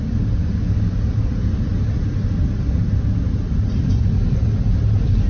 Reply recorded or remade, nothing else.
recorded